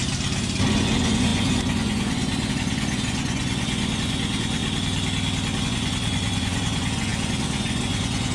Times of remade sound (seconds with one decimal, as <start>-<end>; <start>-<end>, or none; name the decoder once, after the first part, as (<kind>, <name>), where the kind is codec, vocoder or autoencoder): 0.7-4.6 (vocoder, Vocos); 5.6-8.3